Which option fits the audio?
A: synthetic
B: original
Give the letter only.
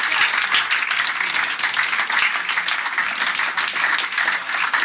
B